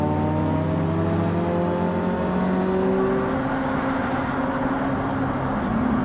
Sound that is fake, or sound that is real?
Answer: real